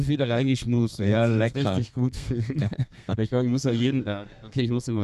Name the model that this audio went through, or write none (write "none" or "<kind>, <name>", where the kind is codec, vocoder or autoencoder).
codec, SNAC